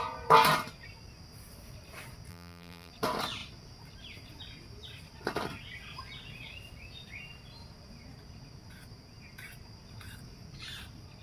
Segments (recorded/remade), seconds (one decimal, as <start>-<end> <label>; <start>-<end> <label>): 0.0-2.3 recorded; 2.3-2.9 remade; 2.9-11.2 recorded